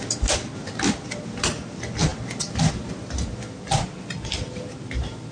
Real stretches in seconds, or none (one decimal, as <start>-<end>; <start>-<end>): 0.0-5.3